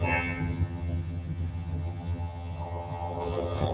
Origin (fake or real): fake